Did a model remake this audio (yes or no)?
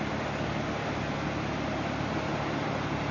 no